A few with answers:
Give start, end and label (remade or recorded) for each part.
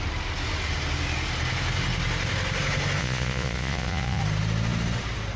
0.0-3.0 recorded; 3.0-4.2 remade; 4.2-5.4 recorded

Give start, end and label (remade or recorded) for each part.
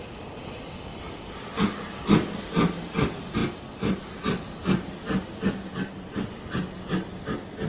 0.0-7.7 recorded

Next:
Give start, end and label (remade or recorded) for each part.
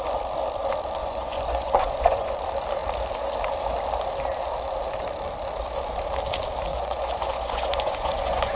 0.0-1.0 recorded; 1.0-2.4 remade; 2.4-6.7 recorded; 6.7-8.6 remade